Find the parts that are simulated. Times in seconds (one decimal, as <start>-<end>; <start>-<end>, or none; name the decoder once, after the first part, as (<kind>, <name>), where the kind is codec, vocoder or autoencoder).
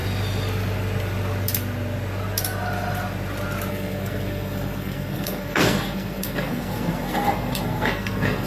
3.7-8.5 (codec, SNAC)